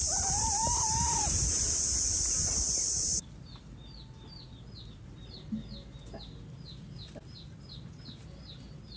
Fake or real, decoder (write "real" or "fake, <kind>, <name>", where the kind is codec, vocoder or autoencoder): real